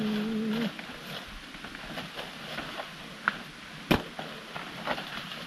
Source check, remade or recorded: recorded